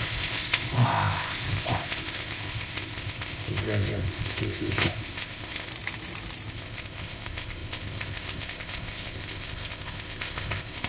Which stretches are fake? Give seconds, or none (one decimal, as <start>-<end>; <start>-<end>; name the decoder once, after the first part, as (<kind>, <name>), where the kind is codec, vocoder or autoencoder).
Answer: 0.0-5.7 (codec, ZipCodec); 6.5-10.9